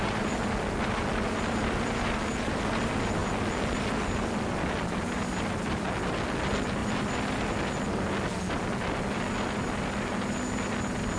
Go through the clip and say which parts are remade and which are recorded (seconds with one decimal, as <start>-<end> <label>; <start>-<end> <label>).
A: 0.0-11.2 recorded

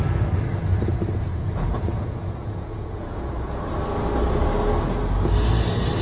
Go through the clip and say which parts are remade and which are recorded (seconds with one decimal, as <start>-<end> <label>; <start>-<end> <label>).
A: 0.0-1.3 recorded; 1.3-3.5 remade; 3.5-6.0 recorded

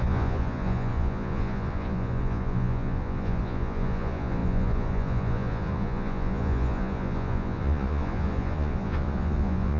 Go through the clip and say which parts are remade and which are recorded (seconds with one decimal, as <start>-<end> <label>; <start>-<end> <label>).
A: 0.0-9.8 remade